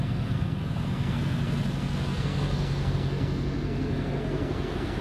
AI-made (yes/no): yes